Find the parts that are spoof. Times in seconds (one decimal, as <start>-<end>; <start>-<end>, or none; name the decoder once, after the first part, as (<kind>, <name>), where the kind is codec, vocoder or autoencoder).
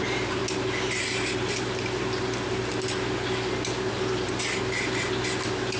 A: none